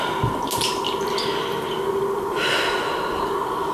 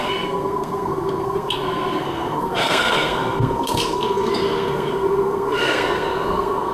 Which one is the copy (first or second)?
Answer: second